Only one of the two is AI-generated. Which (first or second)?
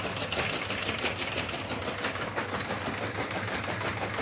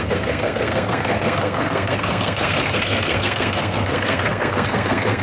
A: second